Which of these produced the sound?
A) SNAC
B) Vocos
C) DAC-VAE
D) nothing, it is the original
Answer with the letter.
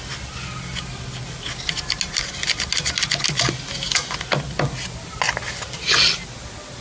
D